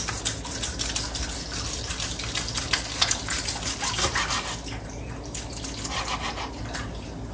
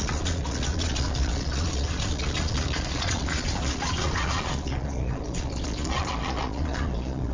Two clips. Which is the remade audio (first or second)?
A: second